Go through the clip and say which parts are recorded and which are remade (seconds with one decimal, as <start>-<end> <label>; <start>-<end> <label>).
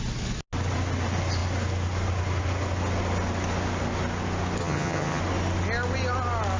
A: 0.0-4.6 recorded; 4.6-5.2 remade; 5.2-6.6 recorded